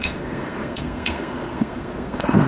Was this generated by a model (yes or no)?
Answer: yes